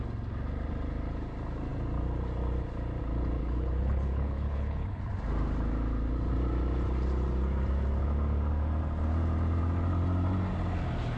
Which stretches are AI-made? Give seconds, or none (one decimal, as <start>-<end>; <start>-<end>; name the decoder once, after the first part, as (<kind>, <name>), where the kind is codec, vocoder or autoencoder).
3.4-5.1 (codec, HILCodec)